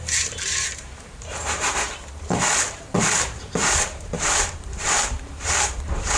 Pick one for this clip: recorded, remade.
remade